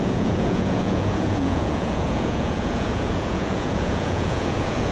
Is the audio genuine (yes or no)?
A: no